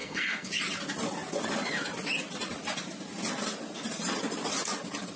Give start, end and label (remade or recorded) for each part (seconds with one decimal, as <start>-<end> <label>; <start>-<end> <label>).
0.0-0.5 remade; 0.5-5.2 recorded